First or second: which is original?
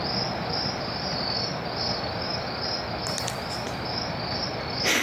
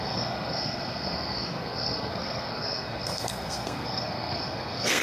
first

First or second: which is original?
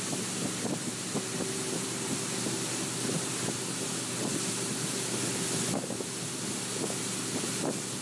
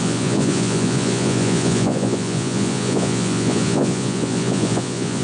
first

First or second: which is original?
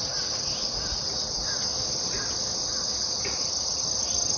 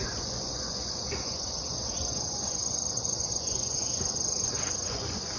first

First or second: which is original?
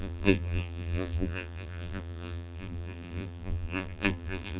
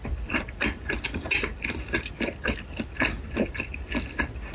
second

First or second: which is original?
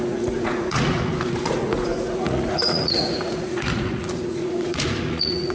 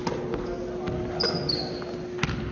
second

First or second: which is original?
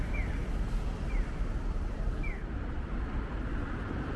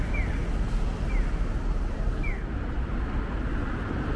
second